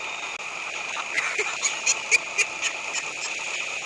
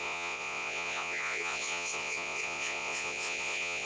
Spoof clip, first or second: second